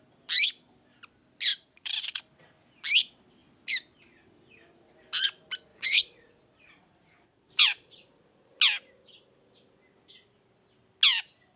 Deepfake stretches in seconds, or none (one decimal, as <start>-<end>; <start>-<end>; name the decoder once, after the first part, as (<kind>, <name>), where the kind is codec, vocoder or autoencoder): 1.5-2.2 (vocoder, Vocos); 5.7-8.5